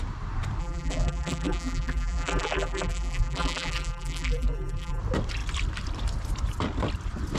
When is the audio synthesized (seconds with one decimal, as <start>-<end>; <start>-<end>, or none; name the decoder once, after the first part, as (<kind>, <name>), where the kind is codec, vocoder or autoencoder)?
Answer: 0.6-5.0 (vocoder, BigVGAN v2)